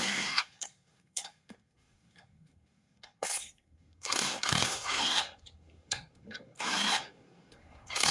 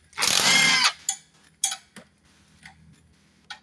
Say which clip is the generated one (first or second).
first